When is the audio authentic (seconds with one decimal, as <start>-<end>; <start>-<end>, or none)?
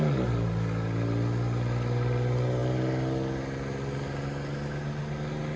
0.0-5.6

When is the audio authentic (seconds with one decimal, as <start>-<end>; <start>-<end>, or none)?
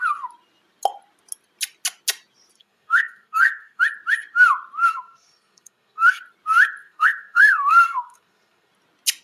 0.0-2.6; 3.8-4.9; 6.2-6.8; 8.7-9.2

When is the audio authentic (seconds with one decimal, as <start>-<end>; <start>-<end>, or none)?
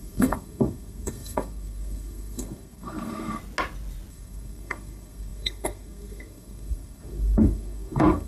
3.4-4.1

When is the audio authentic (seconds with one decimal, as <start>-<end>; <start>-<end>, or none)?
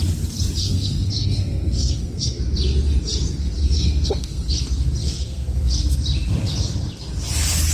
0.0-0.6; 2.4-3.4; 4.5-5.0; 5.7-7.7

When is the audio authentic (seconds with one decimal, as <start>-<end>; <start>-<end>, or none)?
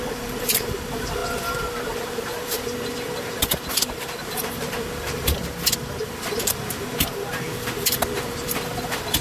5.4-6.4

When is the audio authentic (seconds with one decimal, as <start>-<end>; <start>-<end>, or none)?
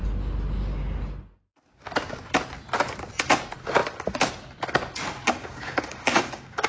0.0-5.4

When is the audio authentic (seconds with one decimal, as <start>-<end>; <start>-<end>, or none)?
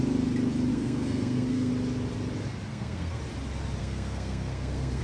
0.0-0.7; 1.7-2.7; 3.2-3.8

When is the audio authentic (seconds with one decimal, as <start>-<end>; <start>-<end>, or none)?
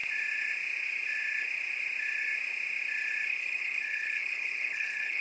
0.0-3.3